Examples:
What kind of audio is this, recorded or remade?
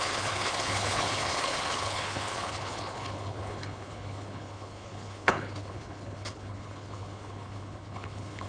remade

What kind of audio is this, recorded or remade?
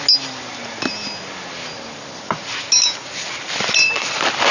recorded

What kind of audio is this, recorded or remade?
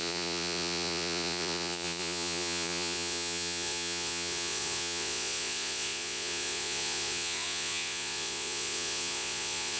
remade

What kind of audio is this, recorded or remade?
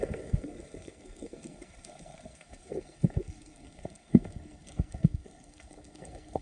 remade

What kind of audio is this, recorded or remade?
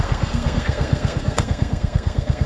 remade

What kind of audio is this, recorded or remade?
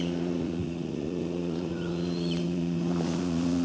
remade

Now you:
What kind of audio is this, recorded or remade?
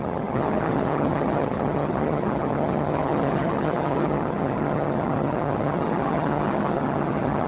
remade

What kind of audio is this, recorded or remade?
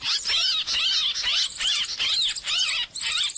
recorded